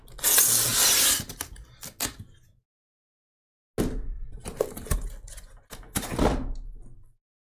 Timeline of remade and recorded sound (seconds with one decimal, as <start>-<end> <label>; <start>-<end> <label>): 0.0-7.4 recorded